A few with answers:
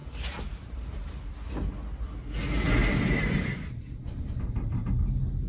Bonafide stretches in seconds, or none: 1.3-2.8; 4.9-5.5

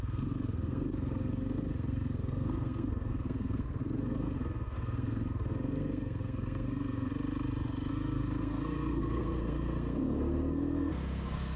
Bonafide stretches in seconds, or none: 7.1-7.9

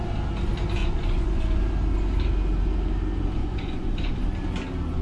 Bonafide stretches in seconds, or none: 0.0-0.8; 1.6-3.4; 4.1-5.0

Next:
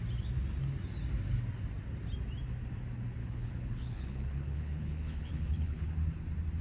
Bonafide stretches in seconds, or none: 0.0-3.2; 5.9-6.6

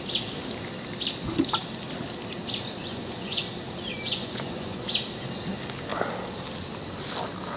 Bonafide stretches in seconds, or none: 0.0-2.8; 3.4-3.9; 4.8-7.6

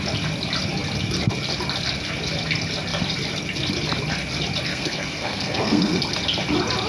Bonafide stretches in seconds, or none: 0.0-4.7; 6.0-6.9